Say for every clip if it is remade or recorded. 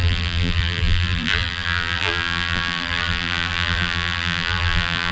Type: remade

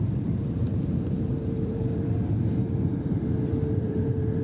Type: remade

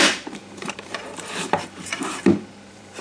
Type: remade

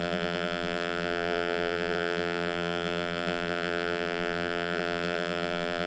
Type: remade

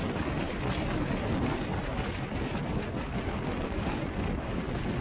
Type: recorded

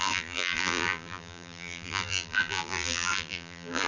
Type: remade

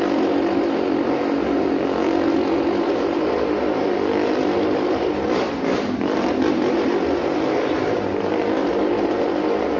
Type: recorded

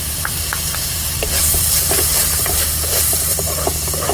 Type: remade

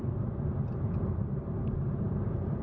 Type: remade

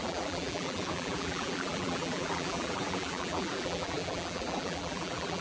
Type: remade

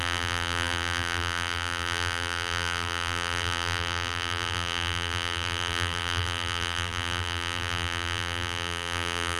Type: remade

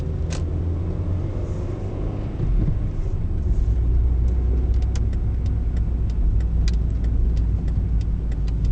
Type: recorded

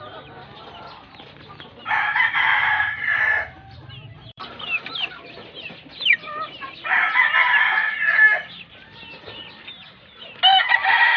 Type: remade